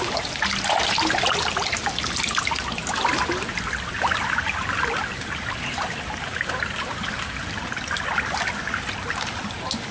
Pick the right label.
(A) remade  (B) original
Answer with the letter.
B